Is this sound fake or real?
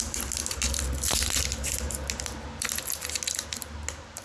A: real